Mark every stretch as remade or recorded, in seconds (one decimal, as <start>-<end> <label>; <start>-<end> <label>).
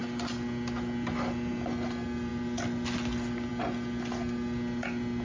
0.0-5.2 recorded